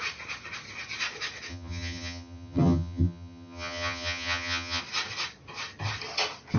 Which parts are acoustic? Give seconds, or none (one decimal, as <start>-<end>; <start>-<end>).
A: 0.0-1.5; 4.8-6.6